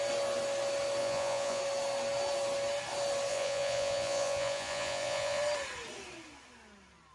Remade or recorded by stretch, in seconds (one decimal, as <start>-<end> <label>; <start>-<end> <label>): 0.0-1.0 recorded; 1.0-1.6 remade; 1.6-3.3 recorded; 3.3-5.4 remade; 5.4-7.1 recorded